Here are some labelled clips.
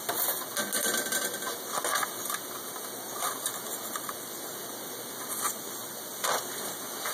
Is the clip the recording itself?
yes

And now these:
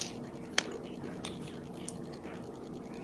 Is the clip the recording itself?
yes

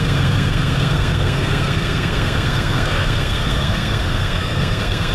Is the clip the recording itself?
no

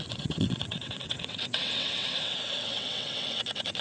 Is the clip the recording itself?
no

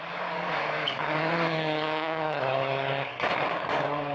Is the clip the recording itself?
no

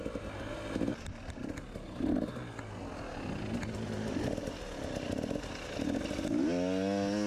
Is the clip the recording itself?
yes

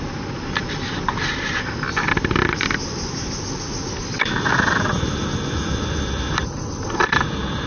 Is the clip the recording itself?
yes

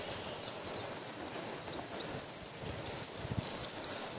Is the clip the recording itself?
yes